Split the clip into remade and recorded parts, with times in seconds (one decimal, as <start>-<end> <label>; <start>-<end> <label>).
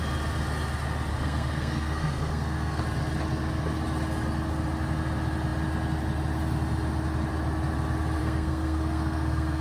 0.0-1.1 recorded; 1.1-2.8 remade; 2.8-8.2 recorded; 8.2-9.6 remade